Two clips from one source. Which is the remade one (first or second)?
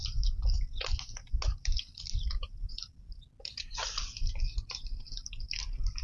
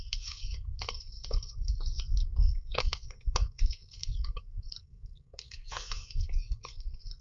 second